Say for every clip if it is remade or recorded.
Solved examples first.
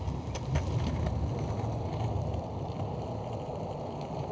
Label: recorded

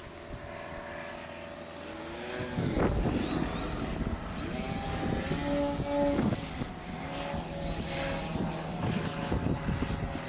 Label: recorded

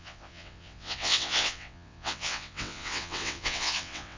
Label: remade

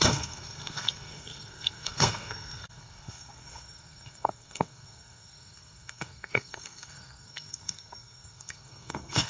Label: remade